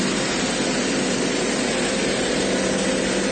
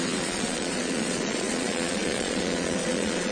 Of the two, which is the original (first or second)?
first